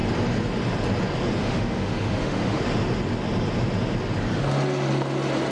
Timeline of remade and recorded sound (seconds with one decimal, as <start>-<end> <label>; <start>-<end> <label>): 0.0-1.4 recorded; 1.4-2.6 remade; 2.6-5.5 recorded